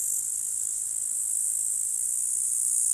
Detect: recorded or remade recorded